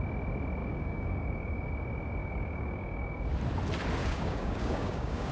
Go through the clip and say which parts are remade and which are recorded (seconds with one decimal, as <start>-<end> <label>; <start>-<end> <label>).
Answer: 0.0-0.6 recorded; 0.6-1.7 remade; 1.7-2.2 recorded; 2.2-3.2 remade; 3.2-4.0 recorded; 4.0-5.3 remade